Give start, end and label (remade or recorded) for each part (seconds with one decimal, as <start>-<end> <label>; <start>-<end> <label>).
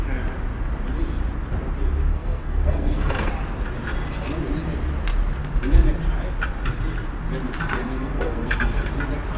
0.0-2.1 recorded; 2.1-3.3 remade; 3.3-7.8 recorded; 7.8-8.9 remade; 8.9-9.4 recorded